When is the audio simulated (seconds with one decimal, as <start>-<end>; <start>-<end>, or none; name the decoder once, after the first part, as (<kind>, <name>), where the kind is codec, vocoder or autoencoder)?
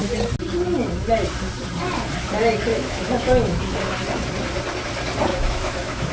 2.7-3.6 (autoencoder, DAC-VAE); 5.3-6.1